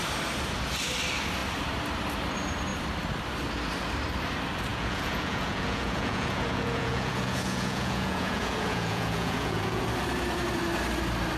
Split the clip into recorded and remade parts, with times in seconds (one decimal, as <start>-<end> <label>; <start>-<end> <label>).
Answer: 0.0-4.7 recorded; 4.7-9.8 remade; 9.8-11.4 recorded